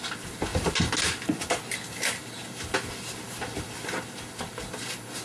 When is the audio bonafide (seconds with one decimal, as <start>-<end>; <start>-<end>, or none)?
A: 0.0-5.2